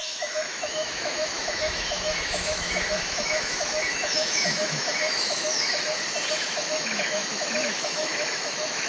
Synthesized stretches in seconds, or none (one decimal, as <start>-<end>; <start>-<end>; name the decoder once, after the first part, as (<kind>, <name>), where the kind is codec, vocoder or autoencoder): 0.0-5.7 (autoencoder, DAC-VAE); 6.3-8.9